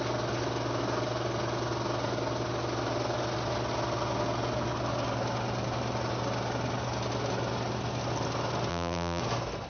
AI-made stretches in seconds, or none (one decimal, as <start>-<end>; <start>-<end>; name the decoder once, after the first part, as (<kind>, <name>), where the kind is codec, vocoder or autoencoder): 8.7-9.2 (vocoder, BigVGAN v2)